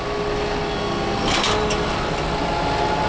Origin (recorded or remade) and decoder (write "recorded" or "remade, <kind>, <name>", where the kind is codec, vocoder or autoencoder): recorded